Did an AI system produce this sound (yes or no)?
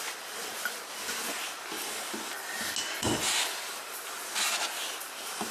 no